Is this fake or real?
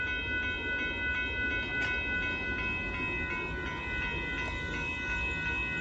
real